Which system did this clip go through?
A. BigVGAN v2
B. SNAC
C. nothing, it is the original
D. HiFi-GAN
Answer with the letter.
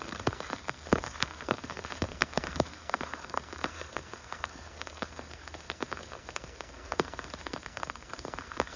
B